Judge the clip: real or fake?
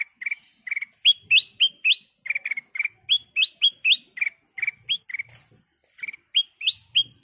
real